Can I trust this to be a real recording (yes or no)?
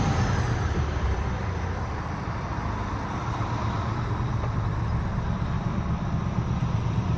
no